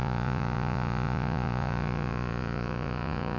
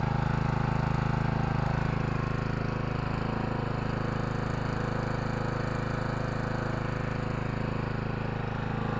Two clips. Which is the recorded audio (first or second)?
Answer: second